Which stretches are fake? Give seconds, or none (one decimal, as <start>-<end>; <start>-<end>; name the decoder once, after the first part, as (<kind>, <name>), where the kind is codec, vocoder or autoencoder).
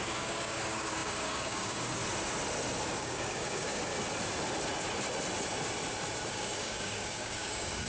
0.0-2.0 (codec, DAC); 3.0-3.9; 6.3-7.9